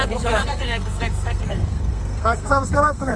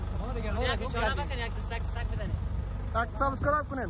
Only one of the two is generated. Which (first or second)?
first